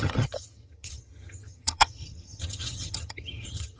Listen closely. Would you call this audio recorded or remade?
remade